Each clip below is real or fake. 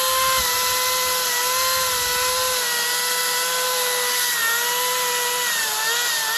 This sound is real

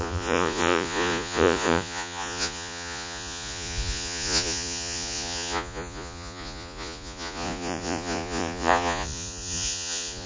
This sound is fake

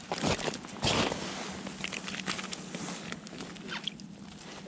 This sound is real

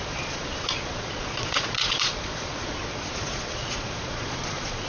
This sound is fake